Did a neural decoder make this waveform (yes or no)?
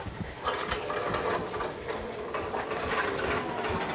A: no